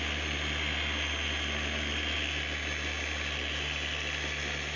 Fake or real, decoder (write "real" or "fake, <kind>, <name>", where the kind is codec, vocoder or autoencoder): real